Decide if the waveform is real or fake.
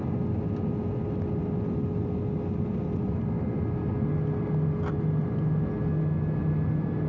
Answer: real